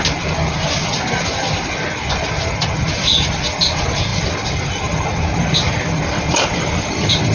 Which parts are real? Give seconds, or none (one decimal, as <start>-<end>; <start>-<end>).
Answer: 0.0-7.3